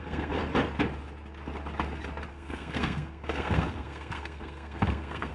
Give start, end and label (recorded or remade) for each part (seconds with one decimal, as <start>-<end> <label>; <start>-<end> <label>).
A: 0.0-0.4 remade; 0.4-2.3 recorded; 2.3-5.3 remade